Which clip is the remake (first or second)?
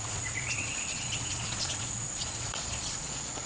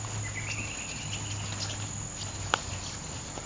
first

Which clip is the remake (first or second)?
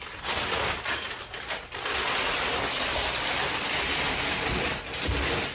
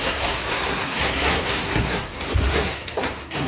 second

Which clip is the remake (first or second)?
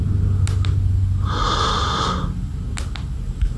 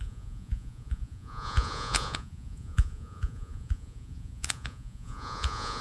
second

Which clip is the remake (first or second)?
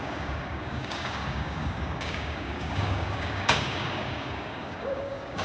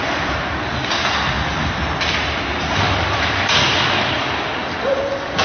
first